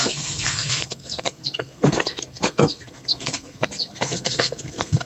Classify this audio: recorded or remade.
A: remade